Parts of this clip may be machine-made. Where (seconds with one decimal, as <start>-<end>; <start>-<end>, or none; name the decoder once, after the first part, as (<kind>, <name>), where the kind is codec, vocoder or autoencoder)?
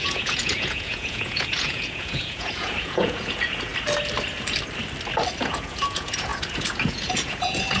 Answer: 0.0-3.7 (vocoder, Vocos); 5.4-7.8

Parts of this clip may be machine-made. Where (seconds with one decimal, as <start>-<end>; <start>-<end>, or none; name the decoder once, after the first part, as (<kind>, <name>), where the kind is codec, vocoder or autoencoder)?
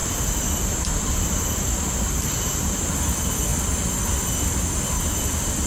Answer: 0.0-2.8 (vocoder, BigVGAN v2)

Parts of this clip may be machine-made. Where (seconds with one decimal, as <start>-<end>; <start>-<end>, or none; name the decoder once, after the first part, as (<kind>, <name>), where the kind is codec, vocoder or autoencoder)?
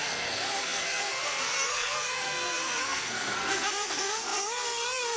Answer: 0.0-5.2 (codec, SNAC)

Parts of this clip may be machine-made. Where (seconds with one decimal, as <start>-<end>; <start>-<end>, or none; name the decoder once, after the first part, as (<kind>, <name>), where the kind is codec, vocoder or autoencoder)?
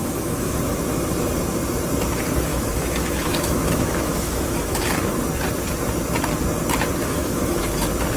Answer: 0.0-0.6 (autoencoder, DAC-VAE); 2.5-4.9; 7.0-7.6